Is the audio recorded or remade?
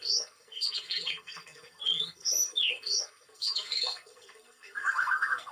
remade